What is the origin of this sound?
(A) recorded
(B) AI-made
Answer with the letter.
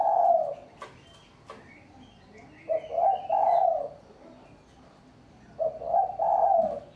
A